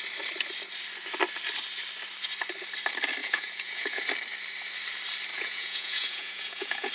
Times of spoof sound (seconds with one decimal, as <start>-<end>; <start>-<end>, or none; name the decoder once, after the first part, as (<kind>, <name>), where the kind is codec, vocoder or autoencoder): 3.2-4.0 (vocoder, Vocos); 5.3-6.9